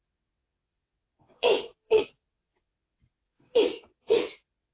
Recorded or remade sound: remade